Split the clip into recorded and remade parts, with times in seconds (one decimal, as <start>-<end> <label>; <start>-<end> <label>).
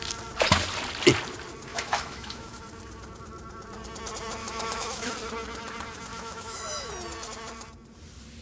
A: 0.0-1.7 recorded; 1.7-2.6 remade; 2.6-4.4 recorded; 4.4-5.1 remade; 5.1-6.1 recorded; 6.1-6.9 remade; 6.9-8.4 recorded